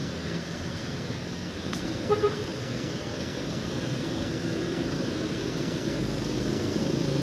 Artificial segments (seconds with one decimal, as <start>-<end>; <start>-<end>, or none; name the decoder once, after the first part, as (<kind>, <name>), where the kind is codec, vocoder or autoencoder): 0.0-7.2 (codec, SNAC)